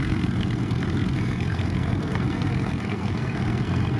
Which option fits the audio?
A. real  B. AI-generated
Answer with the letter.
B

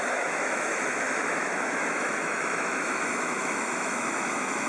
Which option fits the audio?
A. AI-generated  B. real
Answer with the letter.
A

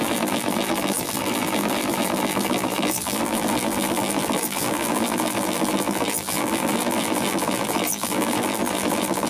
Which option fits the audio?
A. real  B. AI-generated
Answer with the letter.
B